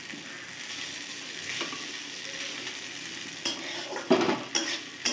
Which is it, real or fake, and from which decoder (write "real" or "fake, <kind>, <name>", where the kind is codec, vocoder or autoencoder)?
real